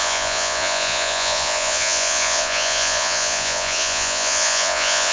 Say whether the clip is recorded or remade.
remade